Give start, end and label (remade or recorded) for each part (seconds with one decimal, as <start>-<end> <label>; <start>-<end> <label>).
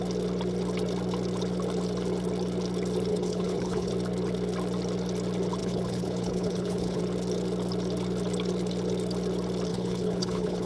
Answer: 0.0-3.1 recorded; 3.1-3.9 remade; 3.9-5.6 recorded; 5.6-7.0 remade; 7.0-9.7 recorded; 9.7-10.7 remade